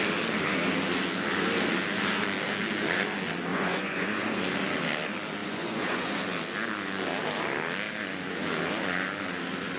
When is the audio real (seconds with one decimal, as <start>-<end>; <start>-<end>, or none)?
0.0-3.5; 4.4-5.4; 6.2-9.8

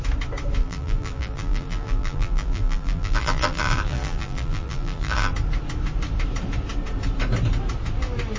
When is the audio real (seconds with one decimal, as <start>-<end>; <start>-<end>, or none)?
0.0-0.6; 5.3-8.4